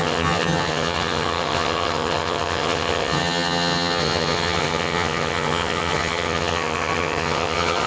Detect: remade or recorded remade